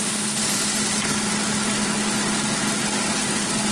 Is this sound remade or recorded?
recorded